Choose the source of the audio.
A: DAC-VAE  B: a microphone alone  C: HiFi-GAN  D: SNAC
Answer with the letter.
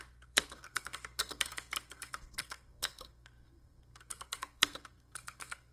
D